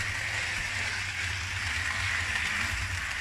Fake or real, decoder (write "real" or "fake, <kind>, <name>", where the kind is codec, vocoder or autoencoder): real